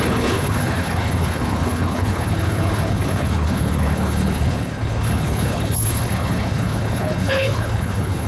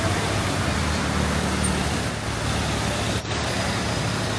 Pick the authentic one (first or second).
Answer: second